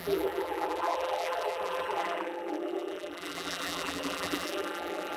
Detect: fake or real fake